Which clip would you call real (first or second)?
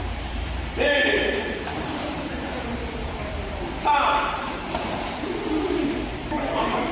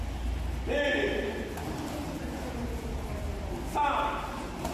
second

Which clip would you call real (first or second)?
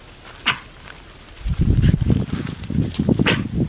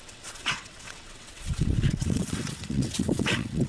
first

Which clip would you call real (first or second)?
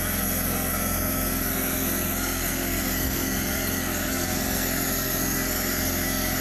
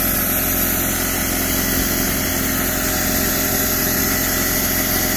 second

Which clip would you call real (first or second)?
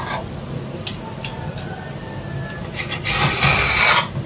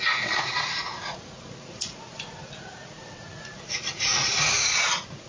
first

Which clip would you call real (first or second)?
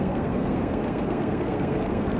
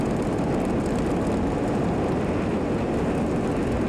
second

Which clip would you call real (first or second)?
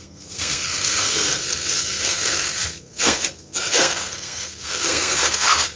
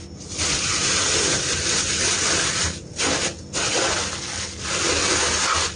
second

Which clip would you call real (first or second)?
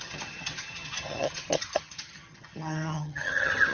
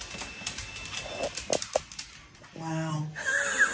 second